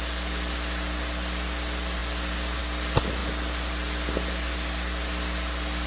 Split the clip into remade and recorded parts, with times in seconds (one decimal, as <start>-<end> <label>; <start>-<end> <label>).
0.0-3.2 recorded; 3.2-5.9 remade